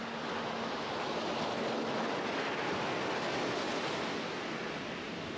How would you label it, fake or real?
real